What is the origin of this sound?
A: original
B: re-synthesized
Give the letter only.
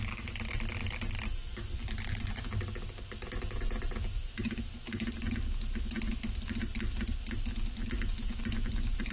A